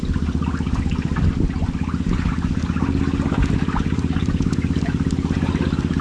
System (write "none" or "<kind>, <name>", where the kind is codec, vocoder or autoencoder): none